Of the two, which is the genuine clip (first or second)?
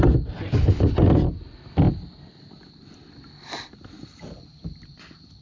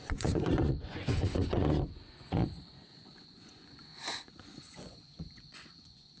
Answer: first